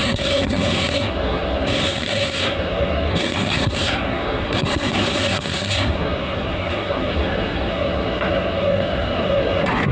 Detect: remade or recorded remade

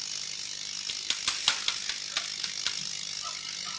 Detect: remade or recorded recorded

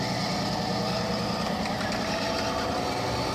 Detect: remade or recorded recorded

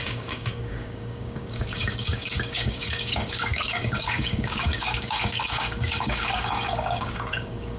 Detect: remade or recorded remade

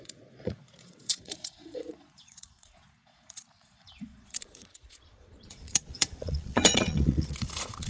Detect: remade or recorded remade